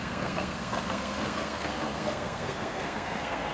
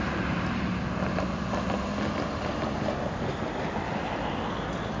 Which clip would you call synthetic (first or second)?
first